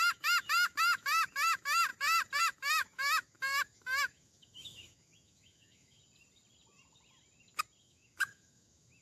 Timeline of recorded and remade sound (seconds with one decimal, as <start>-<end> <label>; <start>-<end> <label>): 0.0-1.9 remade; 1.9-2.4 recorded; 2.4-6.0 remade; 6.0-7.8 recorded; 7.8-9.0 remade